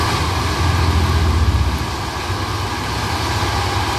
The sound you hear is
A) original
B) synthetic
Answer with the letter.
A